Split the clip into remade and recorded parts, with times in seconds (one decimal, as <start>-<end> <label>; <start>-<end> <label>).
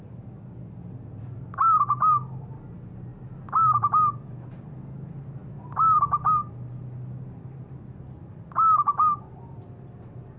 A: 0.0-10.4 recorded